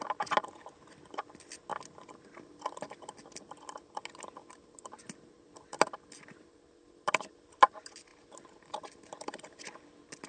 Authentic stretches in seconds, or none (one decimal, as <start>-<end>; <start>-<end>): 0.0-10.3